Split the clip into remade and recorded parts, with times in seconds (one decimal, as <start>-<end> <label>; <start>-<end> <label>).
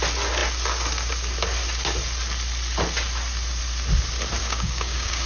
0.0-4.4 recorded; 4.4-5.3 remade